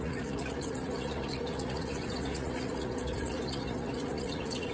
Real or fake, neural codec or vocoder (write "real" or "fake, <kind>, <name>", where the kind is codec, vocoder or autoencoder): fake, vocoder, Vocos